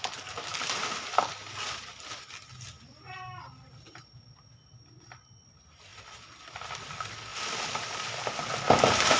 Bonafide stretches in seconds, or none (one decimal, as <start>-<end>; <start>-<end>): 0.0-9.2

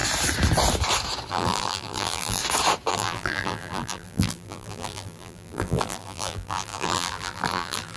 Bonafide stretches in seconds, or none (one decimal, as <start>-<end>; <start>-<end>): 0.0-1.3; 2.4-2.9

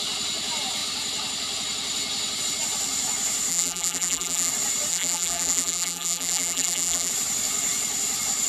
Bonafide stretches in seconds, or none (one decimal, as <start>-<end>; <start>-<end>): 0.0-3.5; 4.5-4.9; 7.1-8.5